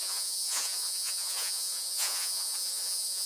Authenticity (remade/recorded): remade